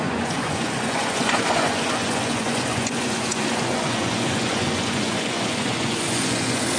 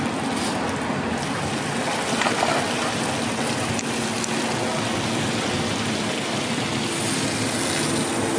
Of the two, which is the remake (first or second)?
first